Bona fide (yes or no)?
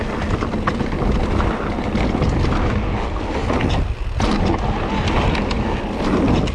yes